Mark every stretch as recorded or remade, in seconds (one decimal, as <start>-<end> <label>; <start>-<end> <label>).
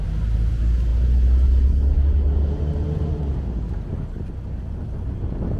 0.0-5.6 recorded